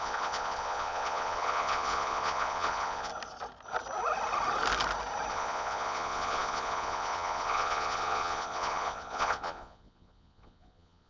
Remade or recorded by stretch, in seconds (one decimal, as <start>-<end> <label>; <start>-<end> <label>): 0.0-3.1 remade; 3.1-5.3 recorded; 5.3-11.1 remade